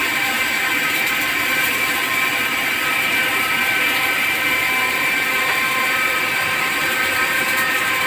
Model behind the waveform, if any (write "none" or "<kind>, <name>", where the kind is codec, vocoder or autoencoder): vocoder, BigVGAN v2